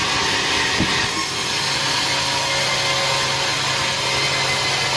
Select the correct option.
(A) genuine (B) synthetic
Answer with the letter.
A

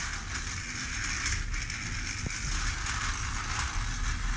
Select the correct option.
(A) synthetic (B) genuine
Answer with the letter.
B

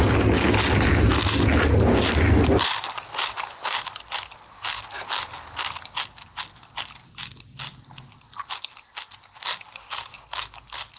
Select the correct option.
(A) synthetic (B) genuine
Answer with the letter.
B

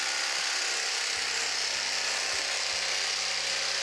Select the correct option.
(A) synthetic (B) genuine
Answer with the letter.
B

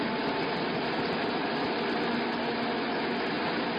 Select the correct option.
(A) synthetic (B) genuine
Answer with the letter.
B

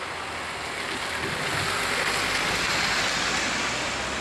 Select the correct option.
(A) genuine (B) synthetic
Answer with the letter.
A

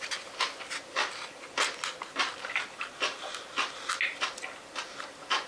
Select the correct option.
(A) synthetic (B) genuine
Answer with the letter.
B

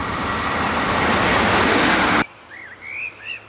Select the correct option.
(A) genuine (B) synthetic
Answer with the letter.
A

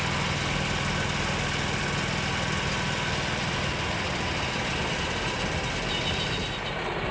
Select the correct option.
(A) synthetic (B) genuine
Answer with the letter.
B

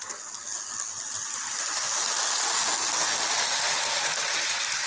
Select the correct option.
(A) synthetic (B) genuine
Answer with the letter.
B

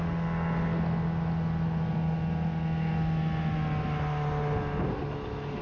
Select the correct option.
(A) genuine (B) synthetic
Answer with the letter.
A